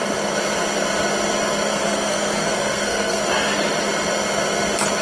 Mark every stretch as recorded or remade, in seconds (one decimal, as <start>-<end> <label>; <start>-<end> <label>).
0.0-1.7 recorded; 1.7-3.2 remade; 3.2-5.0 recorded